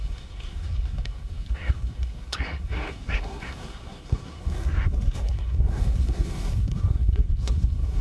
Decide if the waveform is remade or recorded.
remade